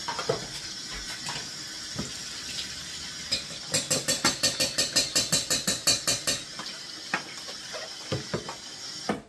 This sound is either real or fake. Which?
real